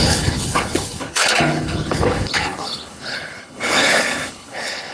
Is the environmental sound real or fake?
fake